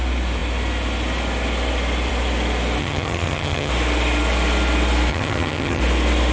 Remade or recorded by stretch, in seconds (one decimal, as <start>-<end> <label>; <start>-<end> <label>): 0.0-2.8 recorded; 2.8-3.7 remade; 3.7-5.1 recorded; 5.1-5.8 remade; 5.8-6.3 recorded

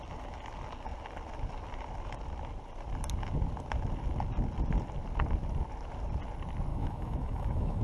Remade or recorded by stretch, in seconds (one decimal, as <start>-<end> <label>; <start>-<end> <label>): 0.0-6.7 recorded; 6.7-7.8 remade